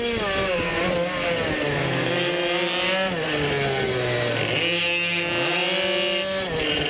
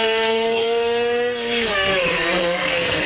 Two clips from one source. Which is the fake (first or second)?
second